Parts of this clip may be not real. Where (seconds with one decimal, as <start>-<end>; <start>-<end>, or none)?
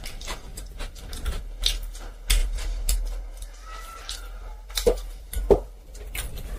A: 0.5-1.4; 2.4-5.7